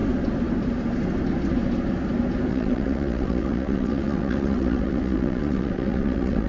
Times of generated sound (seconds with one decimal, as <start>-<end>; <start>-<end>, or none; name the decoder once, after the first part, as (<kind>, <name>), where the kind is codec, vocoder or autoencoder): 2.5-6.5 (vocoder, WaveNeXt)